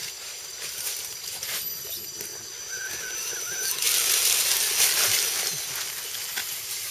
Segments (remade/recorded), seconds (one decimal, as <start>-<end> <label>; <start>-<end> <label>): 0.0-2.3 remade; 2.3-6.4 recorded; 6.4-6.9 remade